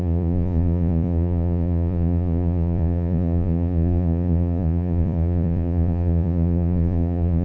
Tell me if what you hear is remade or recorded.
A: remade